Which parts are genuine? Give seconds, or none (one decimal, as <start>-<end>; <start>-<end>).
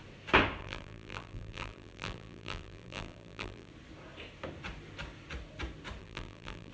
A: 0.0-0.6; 3.7-6.0